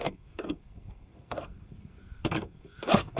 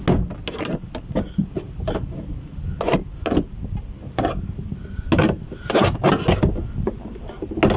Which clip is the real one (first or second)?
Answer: second